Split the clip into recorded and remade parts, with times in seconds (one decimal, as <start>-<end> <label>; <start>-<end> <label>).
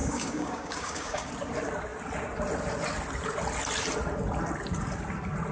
0.0-1.3 remade; 1.3-5.5 recorded